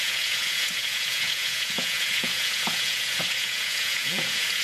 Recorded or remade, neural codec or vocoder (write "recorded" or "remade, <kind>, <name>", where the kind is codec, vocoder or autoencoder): remade, vocoder, Vocos